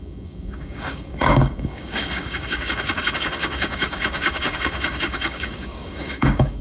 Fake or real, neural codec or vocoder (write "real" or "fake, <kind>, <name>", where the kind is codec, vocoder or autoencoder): fake, codec, DAC